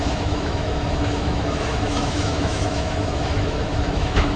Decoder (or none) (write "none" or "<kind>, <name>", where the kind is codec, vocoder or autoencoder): autoencoder, DAC-VAE